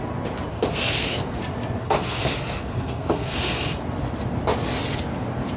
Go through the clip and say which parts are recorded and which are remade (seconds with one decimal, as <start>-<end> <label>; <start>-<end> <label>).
0.0-0.5 recorded; 0.5-1.4 remade; 1.4-1.8 recorded; 1.8-3.8 remade; 3.8-5.6 recorded